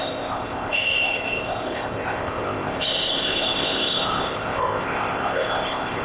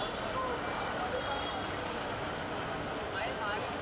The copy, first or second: first